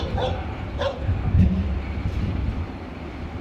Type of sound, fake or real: real